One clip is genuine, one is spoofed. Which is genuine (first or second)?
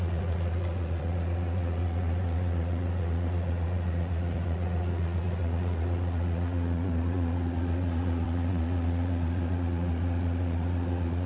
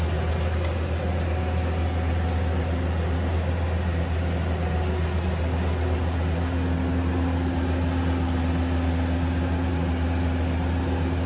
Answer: second